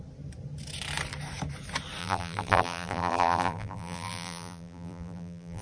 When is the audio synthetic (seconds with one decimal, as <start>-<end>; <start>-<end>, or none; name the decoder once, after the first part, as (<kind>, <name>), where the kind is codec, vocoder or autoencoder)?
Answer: 2.0-5.6 (vocoder, BigVGAN v2)